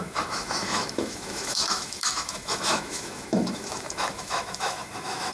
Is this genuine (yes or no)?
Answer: no